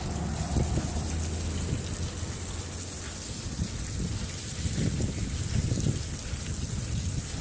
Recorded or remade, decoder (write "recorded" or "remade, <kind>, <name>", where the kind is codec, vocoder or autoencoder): recorded